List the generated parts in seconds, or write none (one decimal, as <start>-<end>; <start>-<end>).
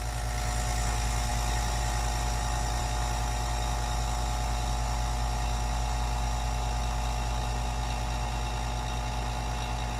none